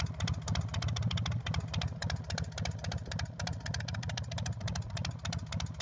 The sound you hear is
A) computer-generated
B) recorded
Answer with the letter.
B